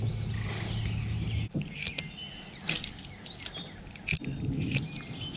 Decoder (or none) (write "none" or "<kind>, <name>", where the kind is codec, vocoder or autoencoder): none